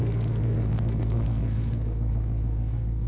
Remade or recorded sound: remade